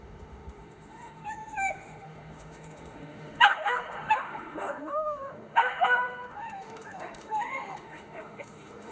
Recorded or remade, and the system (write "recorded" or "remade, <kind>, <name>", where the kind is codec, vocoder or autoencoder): remade, autoencoder, DAC-VAE